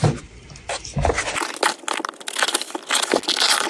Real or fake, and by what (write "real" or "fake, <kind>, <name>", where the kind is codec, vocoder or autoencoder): real